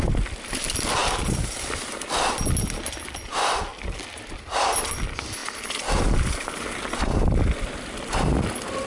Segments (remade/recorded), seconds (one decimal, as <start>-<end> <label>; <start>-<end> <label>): 0.0-5.4 recorded; 5.4-6.3 remade; 6.3-8.9 recorded

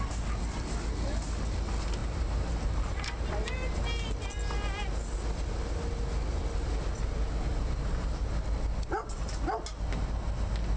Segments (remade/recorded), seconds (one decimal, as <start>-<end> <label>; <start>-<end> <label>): 0.0-2.0 recorded; 2.0-3.2 remade; 3.2-7.5 recorded; 7.5-8.2 remade; 8.2-10.8 recorded

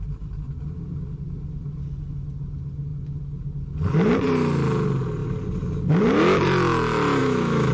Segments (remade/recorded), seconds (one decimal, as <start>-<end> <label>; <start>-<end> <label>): 0.0-7.2 recorded; 7.2-7.7 remade